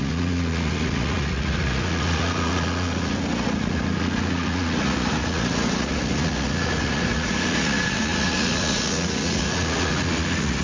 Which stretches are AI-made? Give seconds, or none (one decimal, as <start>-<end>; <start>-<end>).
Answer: 0.0-10.6